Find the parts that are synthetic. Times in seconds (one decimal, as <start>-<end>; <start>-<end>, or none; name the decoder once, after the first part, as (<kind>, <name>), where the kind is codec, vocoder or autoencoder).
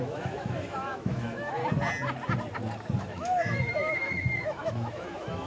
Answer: 0.0-1.6 (autoencoder, DAC-VAE); 3.0-5.5